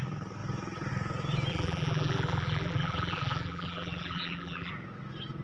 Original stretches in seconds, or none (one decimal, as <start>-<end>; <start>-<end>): 0.0-1.5; 4.7-5.4